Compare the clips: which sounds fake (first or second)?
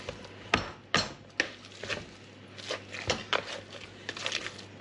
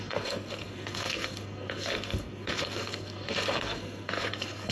second